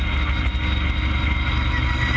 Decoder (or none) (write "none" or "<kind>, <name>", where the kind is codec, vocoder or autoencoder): none